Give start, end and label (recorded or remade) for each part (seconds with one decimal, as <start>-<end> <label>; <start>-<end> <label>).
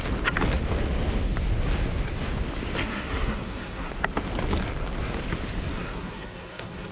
0.0-2.8 recorded; 2.8-3.9 remade; 3.9-5.7 recorded; 5.7-6.9 remade